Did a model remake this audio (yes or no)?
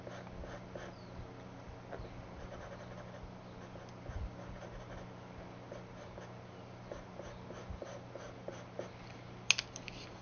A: no